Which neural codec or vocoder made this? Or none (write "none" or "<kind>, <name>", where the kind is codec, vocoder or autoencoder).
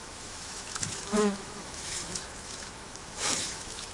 autoencoder, DAC-VAE